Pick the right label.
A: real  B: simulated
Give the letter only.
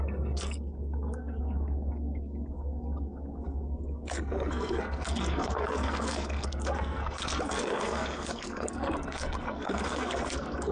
B